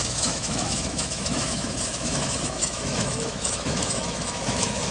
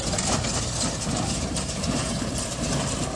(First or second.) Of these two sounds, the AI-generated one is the first